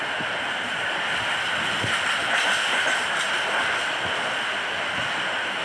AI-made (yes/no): no